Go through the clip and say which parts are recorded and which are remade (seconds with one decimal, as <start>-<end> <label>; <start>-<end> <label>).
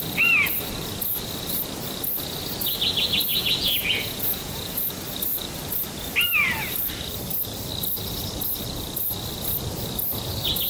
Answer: 0.0-3.3 recorded; 3.3-4.8 remade; 4.8-10.7 recorded